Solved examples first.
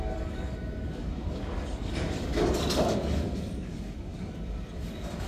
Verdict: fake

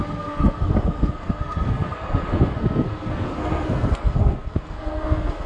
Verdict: fake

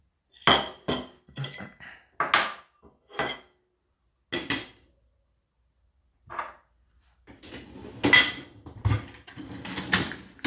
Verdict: real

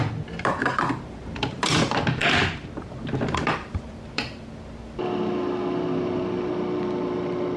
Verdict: fake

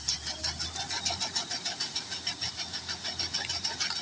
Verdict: real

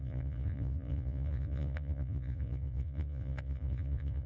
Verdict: fake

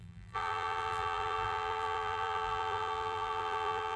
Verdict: fake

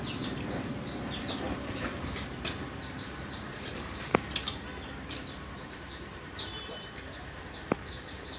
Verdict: fake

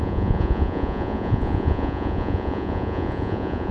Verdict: fake